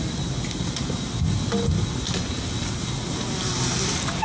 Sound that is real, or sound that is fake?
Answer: real